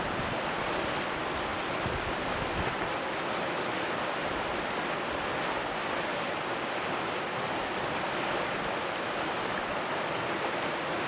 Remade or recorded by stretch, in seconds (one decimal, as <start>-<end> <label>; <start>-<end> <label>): 0.0-1.5 recorded; 1.5-4.8 remade; 4.8-11.1 recorded

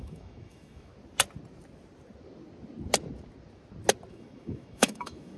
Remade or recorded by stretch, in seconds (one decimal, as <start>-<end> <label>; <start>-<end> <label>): 0.0-0.9 remade; 0.9-4.1 recorded; 4.1-5.4 remade

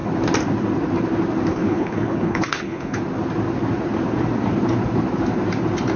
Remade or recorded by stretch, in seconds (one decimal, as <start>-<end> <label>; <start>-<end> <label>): 0.0-1.5 recorded; 1.5-3.0 remade; 3.0-6.0 recorded

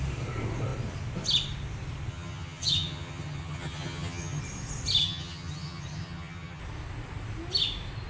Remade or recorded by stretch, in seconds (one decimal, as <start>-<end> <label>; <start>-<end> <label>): 0.0-2.1 recorded; 2.1-4.4 remade; 4.4-5.0 recorded; 5.0-6.6 remade; 6.6-8.1 recorded